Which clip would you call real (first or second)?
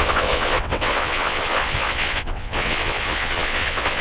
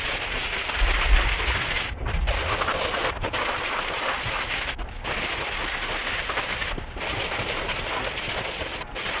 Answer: second